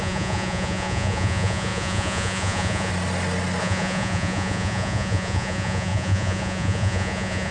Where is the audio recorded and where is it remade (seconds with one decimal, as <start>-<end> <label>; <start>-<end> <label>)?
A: 0.0-2.9 remade; 2.9-3.6 recorded; 3.6-7.5 remade